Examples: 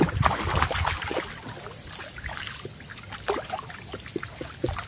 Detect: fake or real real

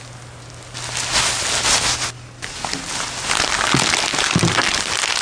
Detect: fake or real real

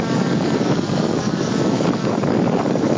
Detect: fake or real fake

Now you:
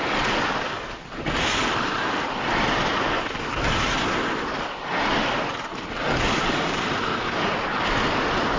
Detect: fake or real real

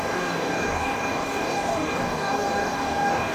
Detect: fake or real fake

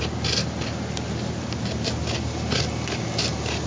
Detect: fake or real real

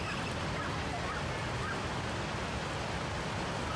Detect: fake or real real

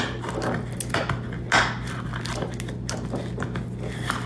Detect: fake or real real